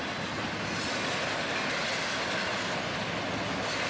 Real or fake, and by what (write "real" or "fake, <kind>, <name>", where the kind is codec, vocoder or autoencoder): real